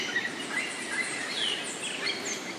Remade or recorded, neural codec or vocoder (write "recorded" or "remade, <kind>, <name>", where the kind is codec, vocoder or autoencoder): recorded